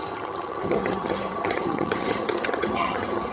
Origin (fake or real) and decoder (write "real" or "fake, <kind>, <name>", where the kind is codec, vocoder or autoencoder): fake, vocoder, HiFi-GAN